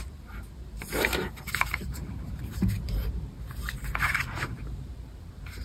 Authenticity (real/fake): fake